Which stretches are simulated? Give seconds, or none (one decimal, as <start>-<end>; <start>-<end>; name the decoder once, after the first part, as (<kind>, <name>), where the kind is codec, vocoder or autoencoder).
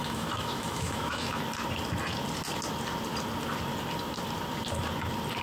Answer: 0.0-1.4 (autoencoder, DAC-VAE)